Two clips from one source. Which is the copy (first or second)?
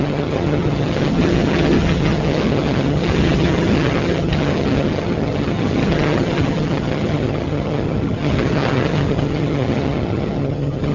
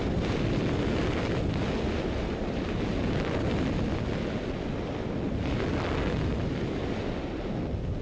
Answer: first